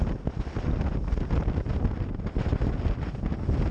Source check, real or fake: real